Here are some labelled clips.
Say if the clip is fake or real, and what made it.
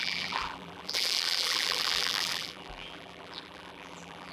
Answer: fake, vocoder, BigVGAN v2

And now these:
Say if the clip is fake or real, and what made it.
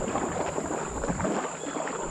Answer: fake, vocoder, BigVGAN v2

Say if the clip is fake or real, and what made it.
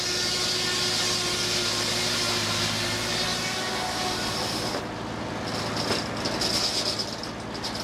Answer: real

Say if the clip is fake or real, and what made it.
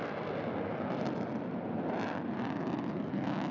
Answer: real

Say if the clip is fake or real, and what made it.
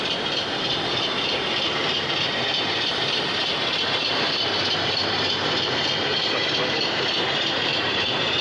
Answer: fake, vocoder, BigVGAN v2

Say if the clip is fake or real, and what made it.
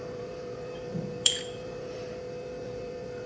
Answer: fake, vocoder, BigVGAN v2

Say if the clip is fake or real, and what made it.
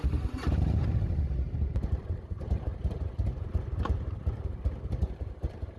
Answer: fake, vocoder, BigVGAN v2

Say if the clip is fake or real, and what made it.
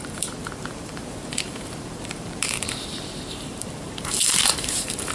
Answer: fake, vocoder, BigVGAN v2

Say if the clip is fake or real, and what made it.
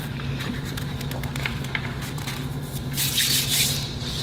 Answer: fake, vocoder, BigVGAN v2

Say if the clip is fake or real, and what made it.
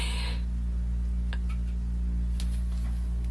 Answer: real